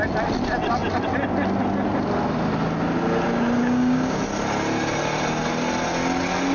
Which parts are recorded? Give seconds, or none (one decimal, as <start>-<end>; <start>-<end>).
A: 0.0-3.6; 4.2-6.5